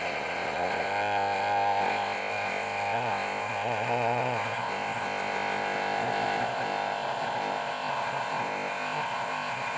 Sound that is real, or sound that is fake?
fake